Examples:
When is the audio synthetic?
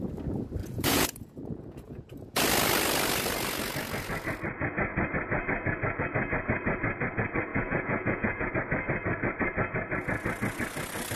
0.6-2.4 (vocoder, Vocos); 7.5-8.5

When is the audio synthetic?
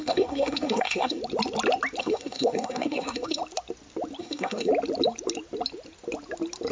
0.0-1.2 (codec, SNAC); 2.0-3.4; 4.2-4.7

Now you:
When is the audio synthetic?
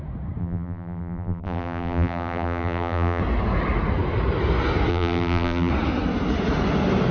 0.4-3.2 (vocoder, BigVGAN v2); 4.9-5.7